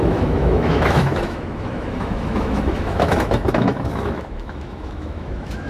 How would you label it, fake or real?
fake